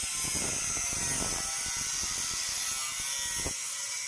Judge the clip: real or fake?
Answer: real